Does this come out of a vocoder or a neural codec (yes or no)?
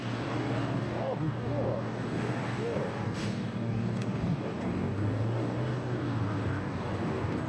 yes